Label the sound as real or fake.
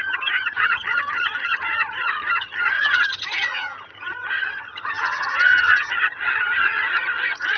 fake